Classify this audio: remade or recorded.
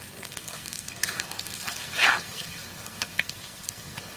remade